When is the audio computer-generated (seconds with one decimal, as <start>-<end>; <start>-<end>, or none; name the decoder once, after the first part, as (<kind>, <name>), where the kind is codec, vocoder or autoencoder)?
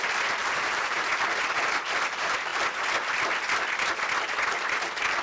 0.4-1.1 (vocoder, BigVGAN v2)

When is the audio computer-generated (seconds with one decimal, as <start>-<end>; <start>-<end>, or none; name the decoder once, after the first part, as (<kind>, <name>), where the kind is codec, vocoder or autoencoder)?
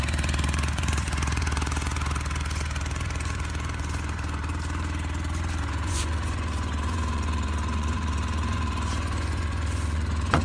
0.0-4.5 (vocoder, Vocos); 5.6-10.4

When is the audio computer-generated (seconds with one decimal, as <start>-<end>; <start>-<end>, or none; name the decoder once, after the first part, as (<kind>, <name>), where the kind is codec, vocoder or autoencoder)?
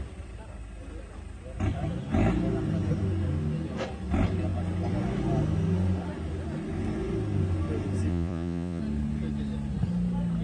8.1-8.8 (vocoder, Vocos)